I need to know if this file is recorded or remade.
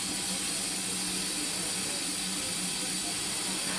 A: recorded